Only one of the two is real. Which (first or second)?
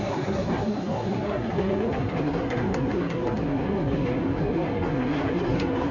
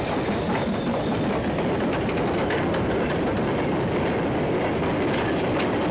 second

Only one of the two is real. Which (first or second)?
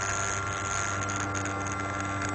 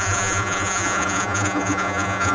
first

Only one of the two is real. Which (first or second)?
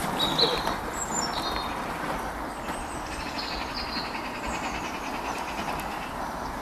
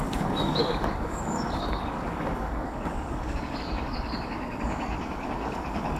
first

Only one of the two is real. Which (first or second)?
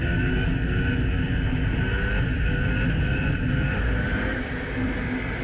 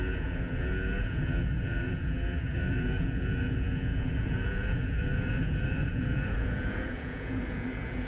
first